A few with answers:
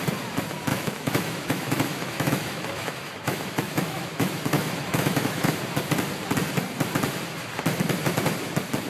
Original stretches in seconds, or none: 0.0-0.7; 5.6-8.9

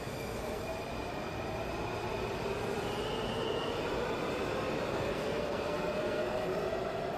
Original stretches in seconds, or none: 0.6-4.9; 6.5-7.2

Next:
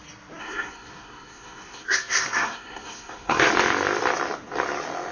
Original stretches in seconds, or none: 0.0-0.4; 3.5-5.1